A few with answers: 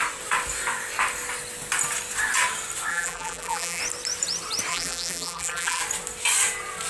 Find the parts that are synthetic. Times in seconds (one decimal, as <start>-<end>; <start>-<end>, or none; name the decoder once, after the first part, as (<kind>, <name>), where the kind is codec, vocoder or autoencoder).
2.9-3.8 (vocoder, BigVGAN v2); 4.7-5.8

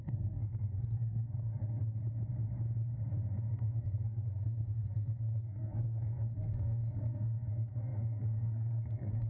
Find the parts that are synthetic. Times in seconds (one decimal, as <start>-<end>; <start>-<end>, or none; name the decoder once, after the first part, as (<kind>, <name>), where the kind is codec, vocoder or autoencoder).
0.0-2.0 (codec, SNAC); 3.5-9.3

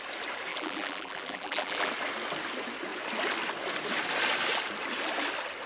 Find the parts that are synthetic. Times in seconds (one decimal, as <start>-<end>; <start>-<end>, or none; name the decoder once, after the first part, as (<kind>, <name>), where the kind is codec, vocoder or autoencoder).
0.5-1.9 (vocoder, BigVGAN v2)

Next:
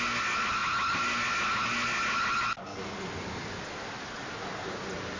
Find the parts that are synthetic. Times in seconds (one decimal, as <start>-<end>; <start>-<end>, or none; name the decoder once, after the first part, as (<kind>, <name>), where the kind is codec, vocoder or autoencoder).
none

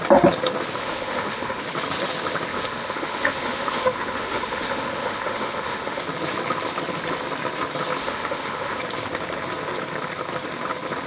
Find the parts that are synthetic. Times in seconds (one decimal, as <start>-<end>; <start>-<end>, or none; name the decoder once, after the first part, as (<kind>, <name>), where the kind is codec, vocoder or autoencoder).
0.8-1.6 (autoencoder, DAC-VAE); 2.5-6.0; 8.0-8.8

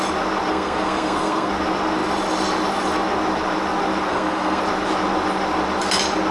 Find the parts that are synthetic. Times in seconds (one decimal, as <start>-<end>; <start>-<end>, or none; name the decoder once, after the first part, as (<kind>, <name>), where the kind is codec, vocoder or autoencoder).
0.5-1.5 (codec, SNAC); 4.1-4.6